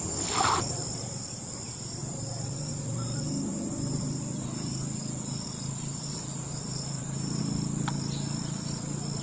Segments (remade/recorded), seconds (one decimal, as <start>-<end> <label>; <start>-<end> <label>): 0.0-2.0 recorded; 2.0-2.7 remade; 2.7-3.5 recorded; 3.5-7.4 remade; 7.4-9.2 recorded